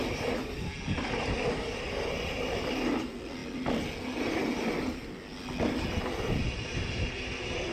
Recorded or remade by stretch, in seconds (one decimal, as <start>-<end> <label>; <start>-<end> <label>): 0.0-7.7 recorded